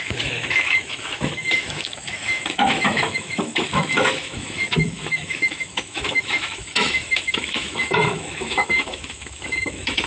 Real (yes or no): no